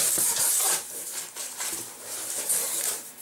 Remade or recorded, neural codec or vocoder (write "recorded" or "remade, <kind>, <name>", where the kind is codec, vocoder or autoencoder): remade, vocoder, BigVGAN v2